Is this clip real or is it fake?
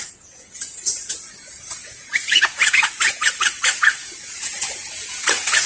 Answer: fake